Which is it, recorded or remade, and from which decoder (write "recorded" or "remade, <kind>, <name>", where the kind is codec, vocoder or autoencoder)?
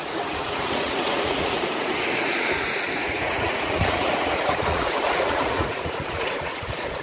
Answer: remade, vocoder, Vocos